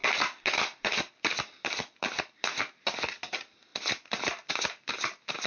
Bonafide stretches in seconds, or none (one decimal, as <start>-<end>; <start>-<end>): 0.0-5.5